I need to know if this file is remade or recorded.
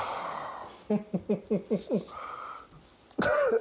recorded